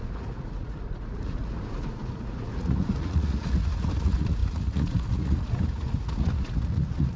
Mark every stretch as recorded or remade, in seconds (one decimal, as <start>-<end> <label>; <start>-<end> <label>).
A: 0.0-7.2 remade